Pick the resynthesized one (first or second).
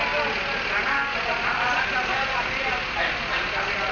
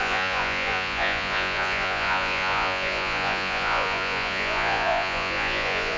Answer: second